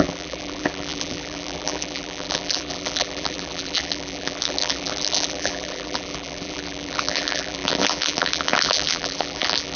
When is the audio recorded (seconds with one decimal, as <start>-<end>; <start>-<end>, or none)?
none